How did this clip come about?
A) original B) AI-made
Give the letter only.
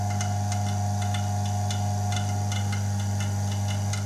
A